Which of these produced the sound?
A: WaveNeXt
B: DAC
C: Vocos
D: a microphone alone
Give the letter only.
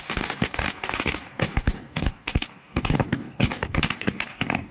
B